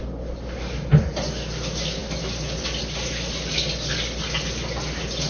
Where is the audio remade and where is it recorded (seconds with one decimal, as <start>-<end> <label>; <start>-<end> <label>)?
0.0-5.3 recorded